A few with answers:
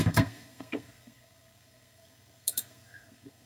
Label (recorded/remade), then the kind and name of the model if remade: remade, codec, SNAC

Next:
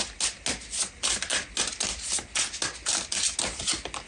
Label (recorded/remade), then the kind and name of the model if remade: recorded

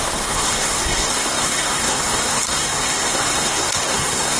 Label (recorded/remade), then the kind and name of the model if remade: remade, codec, SNAC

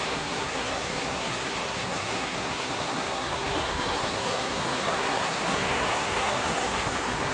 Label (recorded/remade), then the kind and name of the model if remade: remade, codec, SNAC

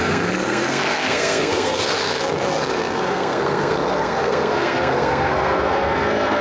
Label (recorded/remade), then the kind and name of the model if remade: remade, codec, SNAC